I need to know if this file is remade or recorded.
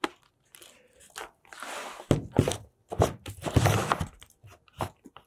recorded